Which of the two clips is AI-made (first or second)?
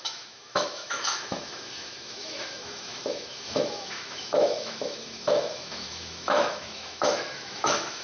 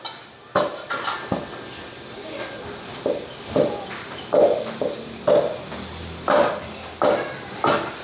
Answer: first